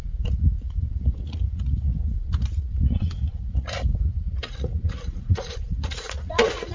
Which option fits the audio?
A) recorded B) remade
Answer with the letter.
B